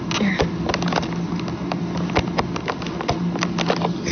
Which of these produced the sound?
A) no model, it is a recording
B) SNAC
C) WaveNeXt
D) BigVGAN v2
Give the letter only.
A